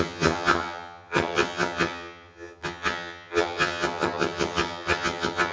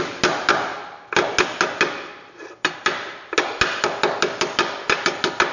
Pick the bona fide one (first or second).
second